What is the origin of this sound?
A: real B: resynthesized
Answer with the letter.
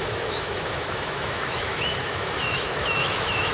B